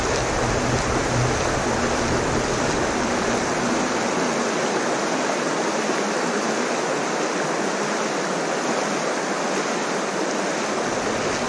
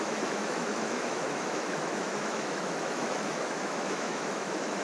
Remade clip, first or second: second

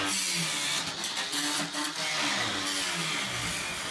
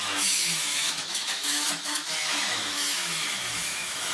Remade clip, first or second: second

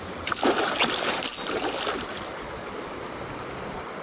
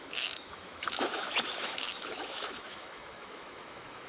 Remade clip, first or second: second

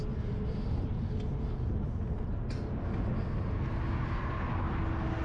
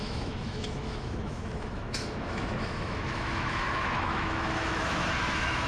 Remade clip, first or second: second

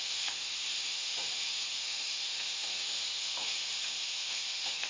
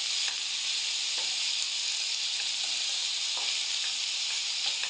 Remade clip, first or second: first